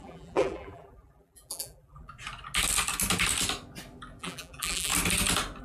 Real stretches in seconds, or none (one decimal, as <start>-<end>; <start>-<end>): 2.1-4.2; 4.9-5.6